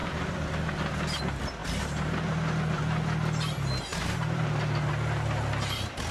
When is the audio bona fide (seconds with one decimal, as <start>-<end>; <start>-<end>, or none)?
1.2-1.6; 2.3-3.9; 4.9-6.1

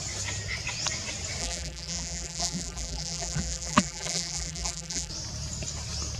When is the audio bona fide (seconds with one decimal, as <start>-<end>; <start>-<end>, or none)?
0.0-1.4; 5.1-6.2

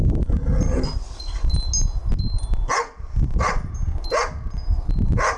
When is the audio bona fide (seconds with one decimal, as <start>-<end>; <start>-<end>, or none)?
0.0-5.4

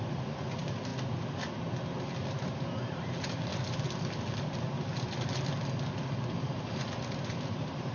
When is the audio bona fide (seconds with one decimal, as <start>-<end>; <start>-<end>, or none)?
0.9-2.3; 3.5-6.4

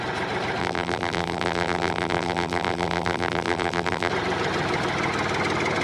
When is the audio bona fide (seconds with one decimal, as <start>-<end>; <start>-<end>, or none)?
0.0-0.6; 4.1-5.8

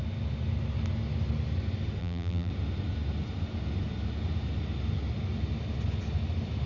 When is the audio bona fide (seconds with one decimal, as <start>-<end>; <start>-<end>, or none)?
0.0-2.0; 2.5-6.7

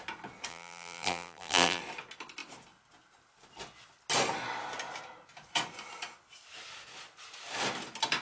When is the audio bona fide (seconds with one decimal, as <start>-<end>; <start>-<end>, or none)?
0.0-0.5; 1.8-8.2

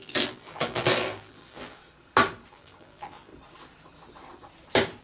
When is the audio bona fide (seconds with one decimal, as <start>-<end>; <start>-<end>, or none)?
1.8-2.5; 3.3-5.0